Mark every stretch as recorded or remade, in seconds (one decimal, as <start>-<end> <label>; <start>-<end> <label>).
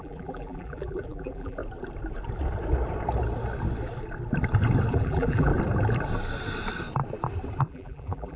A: 0.0-1.6 remade; 1.6-4.9 recorded; 4.9-5.5 remade; 5.5-7.6 recorded; 7.6-8.4 remade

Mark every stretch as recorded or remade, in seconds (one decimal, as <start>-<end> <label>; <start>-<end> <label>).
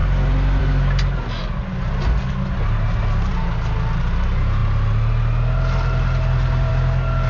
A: 0.0-7.3 recorded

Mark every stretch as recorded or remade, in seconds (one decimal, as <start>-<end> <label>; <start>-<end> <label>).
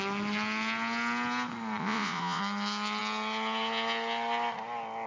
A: 0.0-1.8 recorded; 1.8-2.4 remade; 2.4-5.1 recorded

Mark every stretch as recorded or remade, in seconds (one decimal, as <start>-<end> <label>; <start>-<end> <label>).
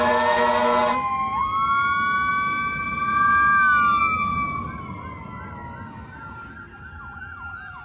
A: 0.0-7.8 recorded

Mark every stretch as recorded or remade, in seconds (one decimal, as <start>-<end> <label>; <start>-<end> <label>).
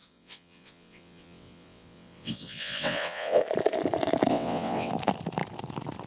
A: 0.0-3.4 remade; 3.4-4.3 recorded; 4.3-4.9 remade; 4.9-6.1 recorded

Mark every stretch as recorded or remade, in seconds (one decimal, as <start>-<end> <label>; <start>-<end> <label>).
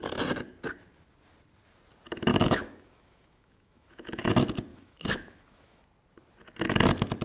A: 0.0-2.3 recorded; 2.3-4.2 remade; 4.2-4.7 recorded; 4.7-5.8 remade; 5.8-7.2 recorded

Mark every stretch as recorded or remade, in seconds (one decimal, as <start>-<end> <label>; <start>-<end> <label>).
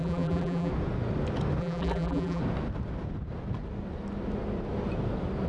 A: 0.0-0.7 remade; 0.7-1.6 recorded; 1.6-2.4 remade; 2.4-5.5 recorded